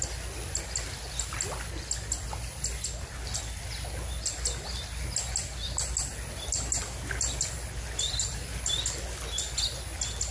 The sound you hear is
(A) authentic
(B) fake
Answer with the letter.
A